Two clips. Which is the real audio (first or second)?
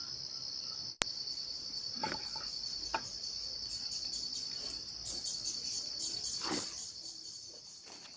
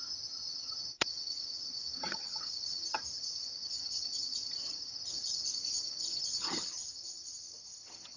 first